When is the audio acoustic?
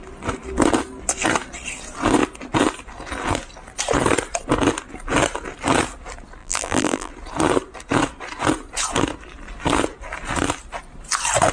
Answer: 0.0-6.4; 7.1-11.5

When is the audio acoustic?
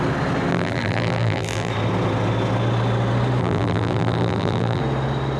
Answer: 0.0-0.5; 1.7-3.4; 4.8-5.4